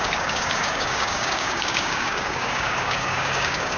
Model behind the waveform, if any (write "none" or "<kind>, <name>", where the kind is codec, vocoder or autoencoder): codec, DAC